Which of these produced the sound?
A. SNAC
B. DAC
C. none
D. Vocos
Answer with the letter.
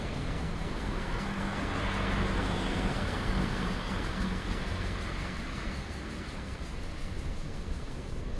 A